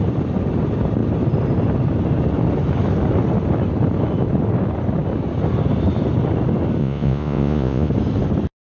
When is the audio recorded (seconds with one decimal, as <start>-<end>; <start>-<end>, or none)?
0.0-6.8; 7.9-8.7